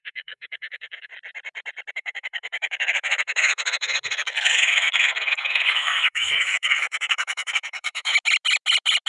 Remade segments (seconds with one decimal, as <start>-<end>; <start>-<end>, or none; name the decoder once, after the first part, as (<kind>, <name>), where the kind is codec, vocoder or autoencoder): 0.0-1.1 (codec, SNAC); 1.9-8.1